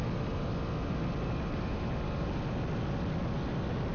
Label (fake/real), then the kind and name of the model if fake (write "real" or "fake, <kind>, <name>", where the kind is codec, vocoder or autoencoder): real